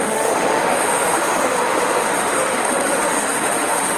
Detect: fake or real fake